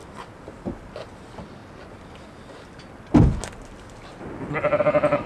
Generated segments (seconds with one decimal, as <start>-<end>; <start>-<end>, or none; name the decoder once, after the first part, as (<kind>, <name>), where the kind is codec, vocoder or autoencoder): none